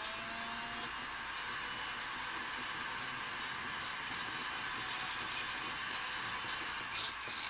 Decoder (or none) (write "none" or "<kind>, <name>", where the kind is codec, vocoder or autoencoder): none